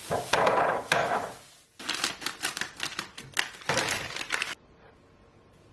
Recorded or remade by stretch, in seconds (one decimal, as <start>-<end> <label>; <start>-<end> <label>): 0.0-0.7 recorded; 0.7-1.3 remade; 1.3-5.7 recorded